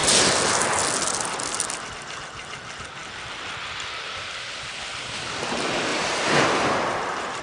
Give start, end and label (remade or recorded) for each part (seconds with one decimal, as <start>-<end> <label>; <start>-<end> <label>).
0.0-5.9 recorded; 5.9-7.4 remade